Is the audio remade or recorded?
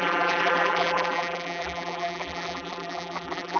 remade